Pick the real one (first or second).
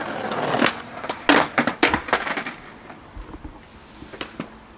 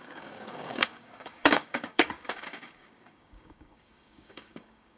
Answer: first